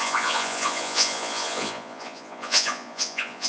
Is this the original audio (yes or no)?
no